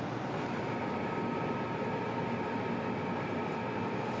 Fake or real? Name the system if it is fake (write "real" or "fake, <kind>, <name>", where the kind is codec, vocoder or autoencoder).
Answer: real